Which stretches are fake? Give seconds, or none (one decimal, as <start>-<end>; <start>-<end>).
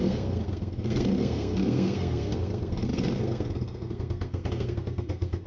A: 0.0-5.5